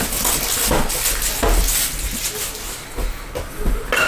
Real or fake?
real